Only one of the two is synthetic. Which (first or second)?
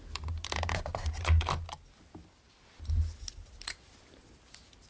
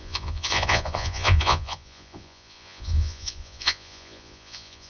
second